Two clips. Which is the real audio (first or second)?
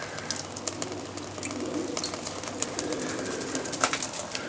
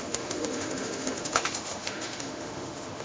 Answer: first